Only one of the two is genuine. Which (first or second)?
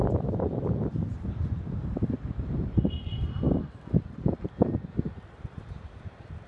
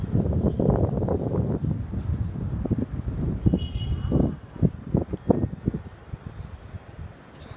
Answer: second